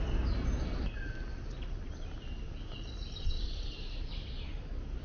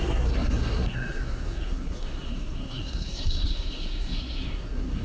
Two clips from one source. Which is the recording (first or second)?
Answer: first